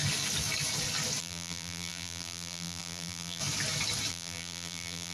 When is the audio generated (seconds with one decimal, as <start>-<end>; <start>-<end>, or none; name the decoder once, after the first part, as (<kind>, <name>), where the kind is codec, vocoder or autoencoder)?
1.2-3.4 (vocoder, BigVGAN v2); 4.1-5.1

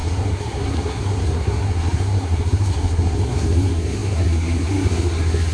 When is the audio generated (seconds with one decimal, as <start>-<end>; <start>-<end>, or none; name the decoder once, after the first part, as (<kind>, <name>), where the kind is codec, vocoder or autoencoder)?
0.0-5.5 (codec, SNAC)

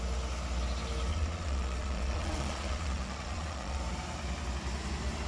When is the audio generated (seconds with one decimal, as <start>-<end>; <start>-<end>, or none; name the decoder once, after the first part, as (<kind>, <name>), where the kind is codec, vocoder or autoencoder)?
1.1-3.8 (vocoder, Vocos)

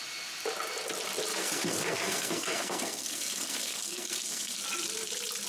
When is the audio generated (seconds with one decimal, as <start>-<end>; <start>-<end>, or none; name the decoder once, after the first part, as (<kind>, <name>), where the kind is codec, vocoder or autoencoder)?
1.3-4.6 (codec, SNAC)